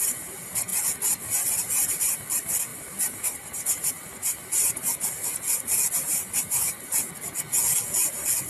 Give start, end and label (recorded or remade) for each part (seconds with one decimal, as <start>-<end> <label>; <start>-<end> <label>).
0.0-2.7 recorded; 2.7-3.9 remade; 3.9-8.5 recorded